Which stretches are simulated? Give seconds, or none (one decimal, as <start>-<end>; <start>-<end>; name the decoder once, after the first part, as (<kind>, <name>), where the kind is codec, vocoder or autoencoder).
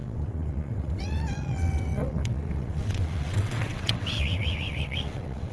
0.0-5.5 (vocoder, WaveNeXt)